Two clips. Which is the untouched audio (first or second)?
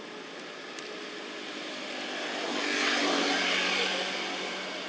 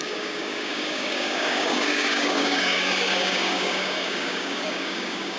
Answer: first